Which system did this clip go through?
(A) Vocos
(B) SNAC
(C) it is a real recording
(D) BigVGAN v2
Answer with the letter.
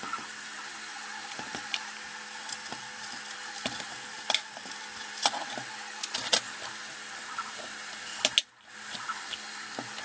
C